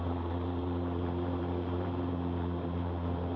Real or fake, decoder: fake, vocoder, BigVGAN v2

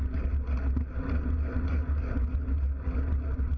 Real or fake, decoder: real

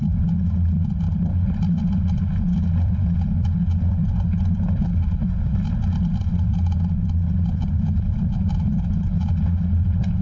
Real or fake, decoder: real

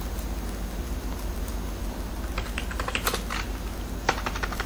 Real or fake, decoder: real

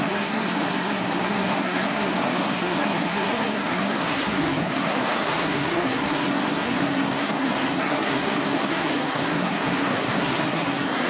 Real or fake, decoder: fake, codec, SNAC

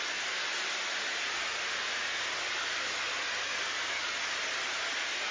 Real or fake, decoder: real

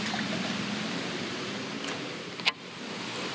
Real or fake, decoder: real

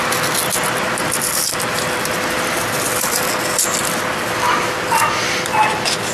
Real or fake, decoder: real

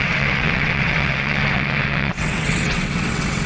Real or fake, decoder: fake, vocoder, WaveNeXt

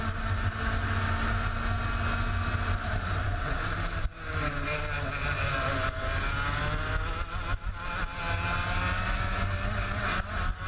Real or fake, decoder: real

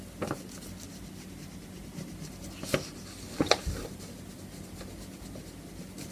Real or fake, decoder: real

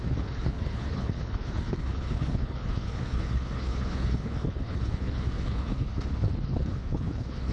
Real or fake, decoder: fake, codec, HILCodec